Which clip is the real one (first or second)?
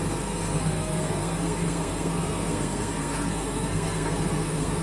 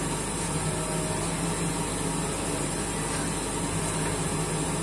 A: second